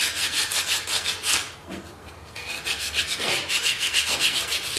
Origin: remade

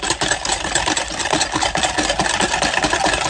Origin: recorded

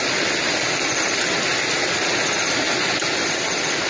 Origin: recorded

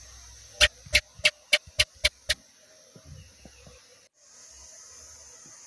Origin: recorded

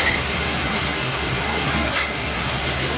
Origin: remade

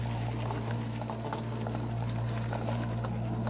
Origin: recorded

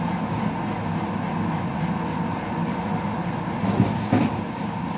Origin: recorded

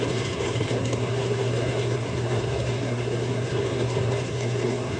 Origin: remade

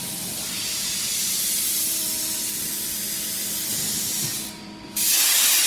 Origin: recorded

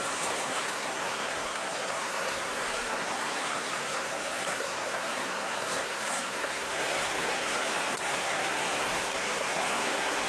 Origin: remade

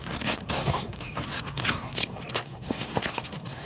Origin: remade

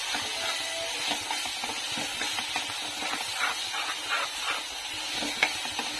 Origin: recorded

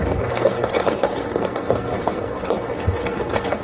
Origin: remade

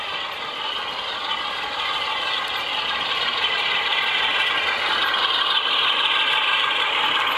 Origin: recorded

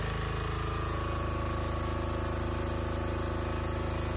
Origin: recorded